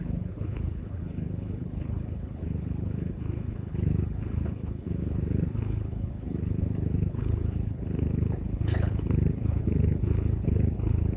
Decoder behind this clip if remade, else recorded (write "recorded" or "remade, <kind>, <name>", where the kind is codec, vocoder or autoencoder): remade, codec, HILCodec